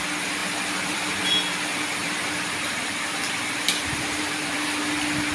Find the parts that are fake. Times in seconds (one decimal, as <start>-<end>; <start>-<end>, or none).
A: 0.4-1.3; 2.0-4.8